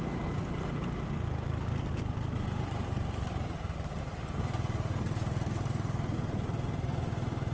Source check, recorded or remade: recorded